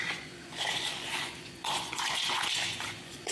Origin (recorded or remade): remade